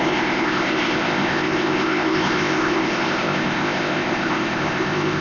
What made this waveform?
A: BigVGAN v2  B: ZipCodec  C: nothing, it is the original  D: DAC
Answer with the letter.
B